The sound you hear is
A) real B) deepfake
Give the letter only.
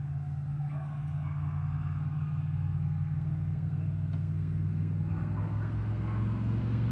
B